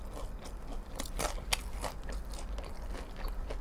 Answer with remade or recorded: recorded